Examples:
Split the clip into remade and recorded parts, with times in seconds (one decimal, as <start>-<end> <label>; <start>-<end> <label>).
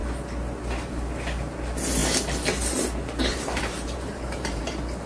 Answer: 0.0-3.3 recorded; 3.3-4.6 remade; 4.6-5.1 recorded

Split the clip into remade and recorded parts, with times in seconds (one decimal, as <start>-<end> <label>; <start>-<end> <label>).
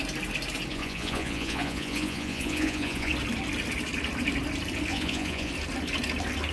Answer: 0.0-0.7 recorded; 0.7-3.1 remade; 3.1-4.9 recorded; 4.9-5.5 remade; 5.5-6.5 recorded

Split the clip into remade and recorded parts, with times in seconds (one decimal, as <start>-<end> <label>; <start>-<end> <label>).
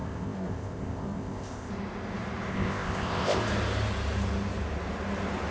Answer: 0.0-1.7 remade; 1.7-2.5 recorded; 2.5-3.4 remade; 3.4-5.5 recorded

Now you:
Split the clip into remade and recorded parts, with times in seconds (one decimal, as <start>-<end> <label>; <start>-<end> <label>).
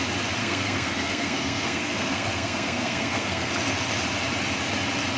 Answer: 0.0-0.4 recorded; 0.4-3.5 remade; 3.5-5.2 recorded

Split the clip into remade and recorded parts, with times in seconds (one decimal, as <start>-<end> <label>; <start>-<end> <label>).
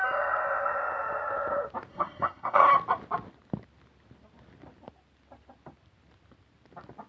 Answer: 0.0-1.9 recorded; 1.9-2.7 remade; 2.7-7.1 recorded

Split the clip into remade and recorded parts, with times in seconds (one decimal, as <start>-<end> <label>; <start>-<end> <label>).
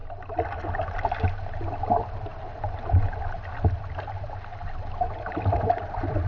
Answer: 0.0-6.3 recorded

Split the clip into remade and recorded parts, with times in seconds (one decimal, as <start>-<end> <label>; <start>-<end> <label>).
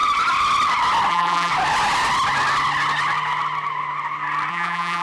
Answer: 0.0-1.1 recorded; 1.1-1.5 remade; 1.5-4.5 recorded; 4.5-5.0 remade